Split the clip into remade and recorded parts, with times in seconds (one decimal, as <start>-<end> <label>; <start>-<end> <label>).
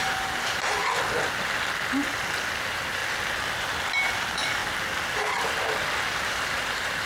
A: 0.0-0.8 remade; 0.8-2.5 recorded; 2.5-3.0 remade; 3.0-4.0 recorded; 4.0-4.6 remade; 4.6-6.1 recorded; 6.1-7.1 remade